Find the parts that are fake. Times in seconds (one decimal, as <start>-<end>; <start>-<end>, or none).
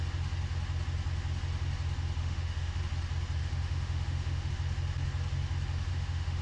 2.2-2.8; 3.4-4.5; 5.9-6.4